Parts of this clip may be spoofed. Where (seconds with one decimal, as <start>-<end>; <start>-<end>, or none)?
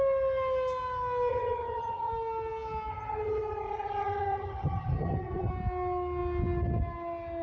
1.3-2.1; 2.9-5.5